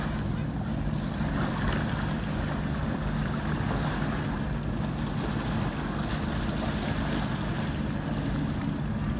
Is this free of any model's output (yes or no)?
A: yes